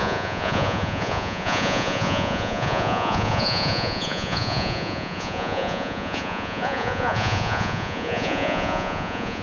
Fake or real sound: fake